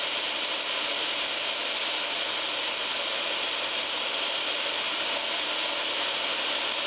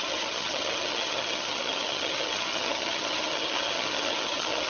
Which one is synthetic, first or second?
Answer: second